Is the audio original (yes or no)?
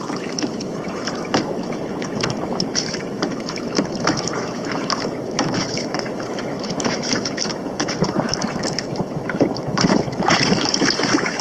no